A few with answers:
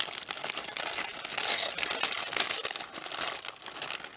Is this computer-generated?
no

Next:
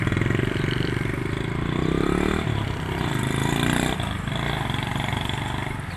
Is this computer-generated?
no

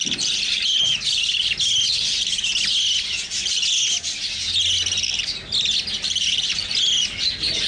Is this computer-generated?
no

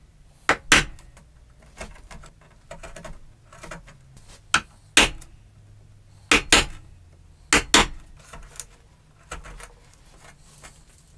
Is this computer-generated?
no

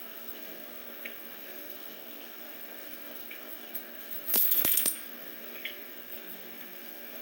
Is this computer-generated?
yes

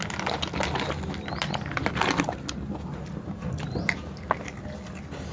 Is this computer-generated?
no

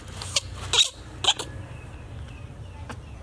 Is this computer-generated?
no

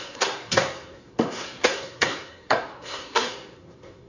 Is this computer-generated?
yes